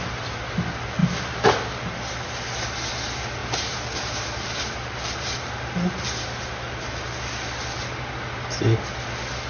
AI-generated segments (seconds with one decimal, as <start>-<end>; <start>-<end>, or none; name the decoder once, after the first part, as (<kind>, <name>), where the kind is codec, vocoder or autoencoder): 1.0-1.7 (vocoder, BigVGAN v2); 3.4-6.8

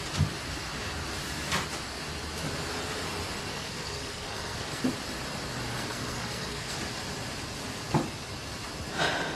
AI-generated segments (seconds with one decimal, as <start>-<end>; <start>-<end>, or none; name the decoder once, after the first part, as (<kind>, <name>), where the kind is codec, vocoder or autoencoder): 3.5-4.8 (codec, SNAC); 5.7-6.8